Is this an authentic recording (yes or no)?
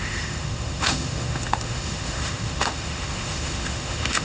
no